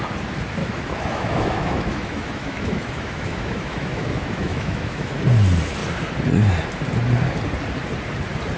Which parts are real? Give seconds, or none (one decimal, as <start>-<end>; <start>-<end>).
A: 0.0-0.6; 5.2-8.6